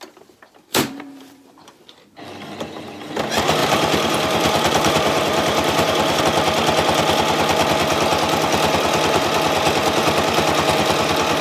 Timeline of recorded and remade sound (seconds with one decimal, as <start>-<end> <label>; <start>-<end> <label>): 0.0-0.7 recorded; 0.7-1.5 remade; 1.5-3.6 recorded; 3.6-6.2 remade; 6.2-11.4 recorded